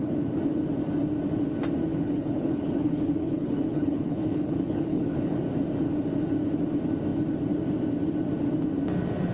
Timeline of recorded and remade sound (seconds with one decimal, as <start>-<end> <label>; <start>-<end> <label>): 0.0-1.9 recorded; 1.9-5.4 remade; 5.4-9.3 recorded